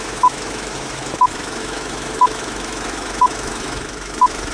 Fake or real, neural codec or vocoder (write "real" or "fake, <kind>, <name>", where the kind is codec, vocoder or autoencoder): fake, autoencoder, DAC-VAE